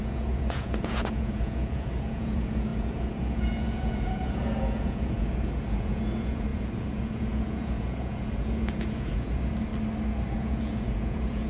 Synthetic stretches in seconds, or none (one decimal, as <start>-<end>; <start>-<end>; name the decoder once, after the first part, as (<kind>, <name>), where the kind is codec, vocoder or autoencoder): 0.0-9.7 (vocoder, Vocos); 10.3-11.5